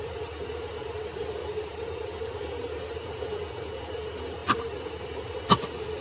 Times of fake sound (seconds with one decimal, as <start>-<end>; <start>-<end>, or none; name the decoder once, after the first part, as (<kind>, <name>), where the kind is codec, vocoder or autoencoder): none